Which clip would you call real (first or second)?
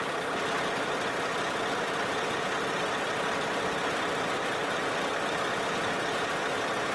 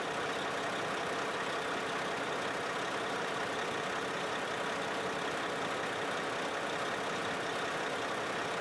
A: second